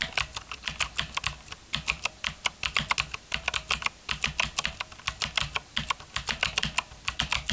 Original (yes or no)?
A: yes